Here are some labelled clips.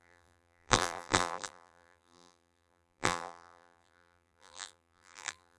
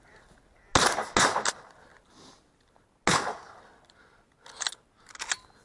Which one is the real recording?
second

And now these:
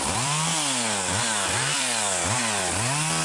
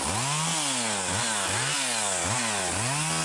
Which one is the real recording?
second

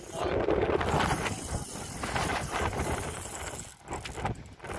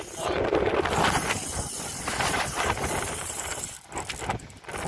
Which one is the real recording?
first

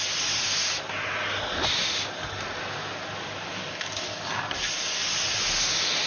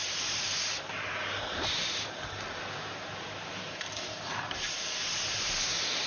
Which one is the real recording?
first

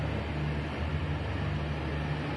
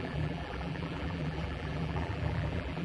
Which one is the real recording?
first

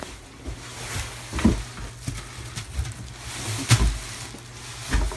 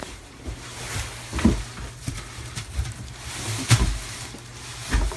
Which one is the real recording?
first